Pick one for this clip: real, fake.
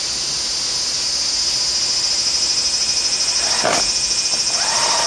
real